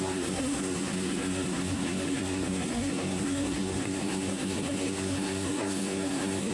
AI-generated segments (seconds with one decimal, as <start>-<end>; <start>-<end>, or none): 0.0-6.5